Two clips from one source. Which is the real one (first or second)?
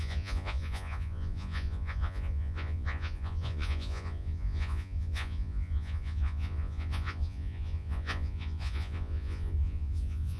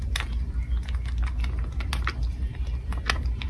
second